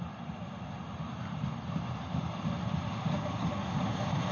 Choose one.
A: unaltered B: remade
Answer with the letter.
A